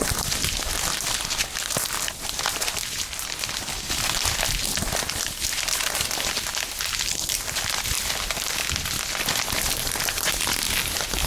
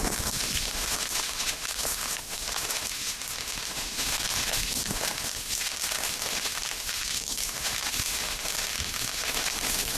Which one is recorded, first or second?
first